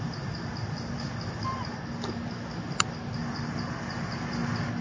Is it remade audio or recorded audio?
recorded